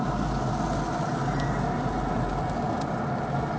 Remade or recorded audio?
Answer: recorded